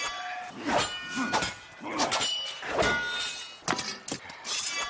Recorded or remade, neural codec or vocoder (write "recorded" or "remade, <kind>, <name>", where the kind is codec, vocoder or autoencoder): recorded